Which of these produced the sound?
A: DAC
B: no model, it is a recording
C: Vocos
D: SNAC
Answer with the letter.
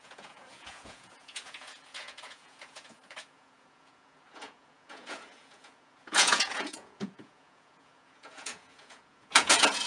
C